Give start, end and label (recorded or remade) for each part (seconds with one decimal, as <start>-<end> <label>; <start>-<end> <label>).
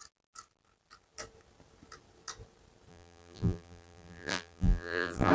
0.0-2.9 recorded; 2.9-5.3 remade